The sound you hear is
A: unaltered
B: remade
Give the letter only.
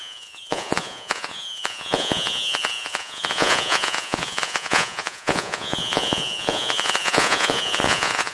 B